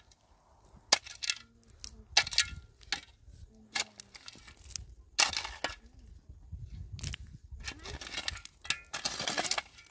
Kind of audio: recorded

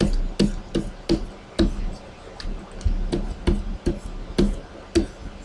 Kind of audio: recorded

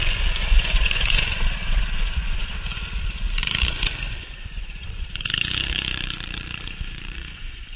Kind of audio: remade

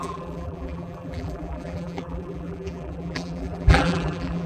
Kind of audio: remade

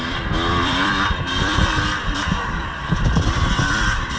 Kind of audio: remade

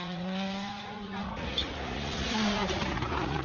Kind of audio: remade